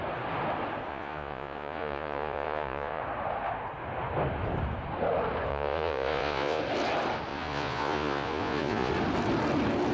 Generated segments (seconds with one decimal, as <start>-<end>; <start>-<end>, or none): 0.9-3.0; 5.5-6.6; 7.3-8.9